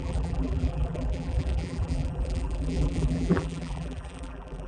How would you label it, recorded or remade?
remade